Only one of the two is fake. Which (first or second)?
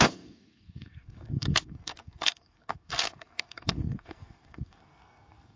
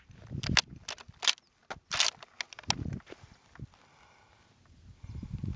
first